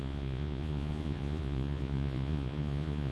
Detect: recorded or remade remade